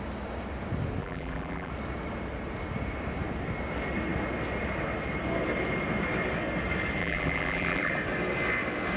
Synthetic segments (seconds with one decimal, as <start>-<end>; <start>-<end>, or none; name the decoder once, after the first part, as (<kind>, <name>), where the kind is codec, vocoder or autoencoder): 1.0-1.7 (vocoder, BigVGAN v2); 7.0-7.9